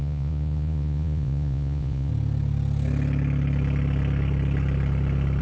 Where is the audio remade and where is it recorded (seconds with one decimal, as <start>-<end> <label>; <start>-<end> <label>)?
0.0-2.1 remade; 2.1-5.4 recorded